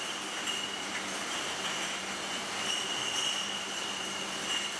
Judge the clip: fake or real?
fake